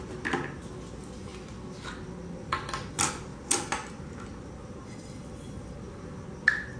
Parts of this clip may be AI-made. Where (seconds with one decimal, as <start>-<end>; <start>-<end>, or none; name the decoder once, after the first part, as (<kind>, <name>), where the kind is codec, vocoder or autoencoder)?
none